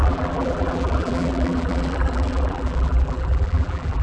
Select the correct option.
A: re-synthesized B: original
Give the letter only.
A